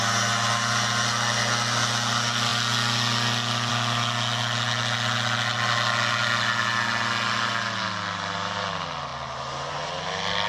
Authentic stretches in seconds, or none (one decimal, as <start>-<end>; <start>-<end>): 0.0-10.5